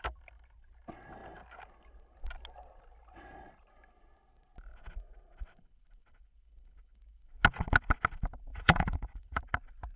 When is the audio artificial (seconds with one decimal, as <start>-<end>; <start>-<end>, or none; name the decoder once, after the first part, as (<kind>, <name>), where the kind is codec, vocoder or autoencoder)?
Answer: 8.5-9.4 (vocoder, Vocos)